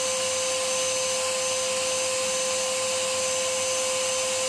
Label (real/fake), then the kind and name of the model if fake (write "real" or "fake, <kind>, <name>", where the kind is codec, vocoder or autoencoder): real